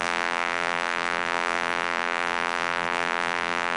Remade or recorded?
remade